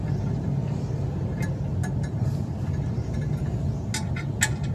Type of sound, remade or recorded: recorded